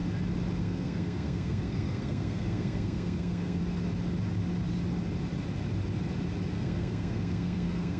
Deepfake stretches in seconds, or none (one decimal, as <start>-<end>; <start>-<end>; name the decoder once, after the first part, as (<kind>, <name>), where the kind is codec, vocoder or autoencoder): 0.6-3.6 (codec, SNAC); 6.5-8.0